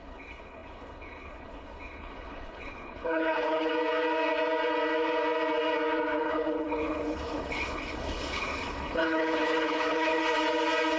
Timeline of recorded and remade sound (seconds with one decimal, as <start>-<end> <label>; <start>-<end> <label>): 0.0-3.7 remade; 3.7-6.2 recorded; 6.2-10.2 remade; 10.2-11.0 recorded